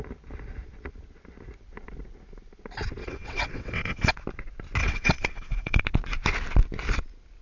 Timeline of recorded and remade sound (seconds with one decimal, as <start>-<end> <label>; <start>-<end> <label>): 0.0-3.0 recorded; 3.0-4.1 remade; 4.1-4.8 recorded; 4.8-5.8 remade; 5.8-7.4 recorded